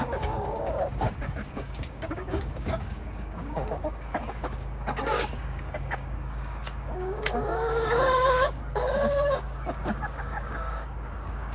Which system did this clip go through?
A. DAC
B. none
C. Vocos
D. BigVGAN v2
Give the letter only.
A